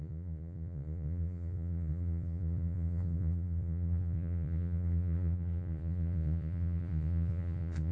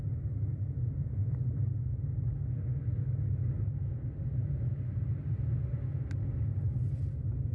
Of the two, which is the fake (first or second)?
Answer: first